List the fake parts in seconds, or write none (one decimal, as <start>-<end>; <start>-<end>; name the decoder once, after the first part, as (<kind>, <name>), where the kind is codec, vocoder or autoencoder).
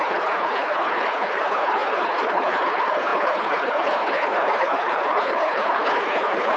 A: 0.0-6.6 (codec, HILCodec)